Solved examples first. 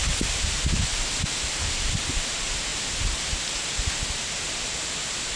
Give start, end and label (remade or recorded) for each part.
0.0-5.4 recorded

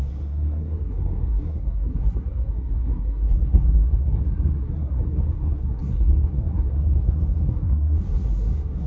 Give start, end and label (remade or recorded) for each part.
0.0-8.9 remade